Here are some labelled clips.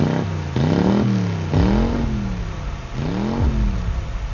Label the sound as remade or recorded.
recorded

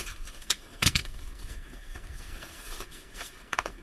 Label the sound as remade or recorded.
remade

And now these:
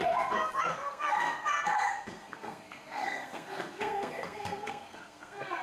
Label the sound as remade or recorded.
remade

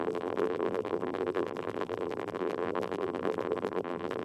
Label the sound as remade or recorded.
remade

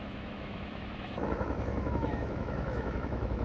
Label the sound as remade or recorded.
remade